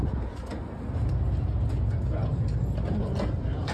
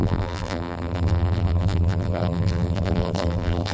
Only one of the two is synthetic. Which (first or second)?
second